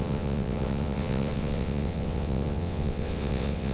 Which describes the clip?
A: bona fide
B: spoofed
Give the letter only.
B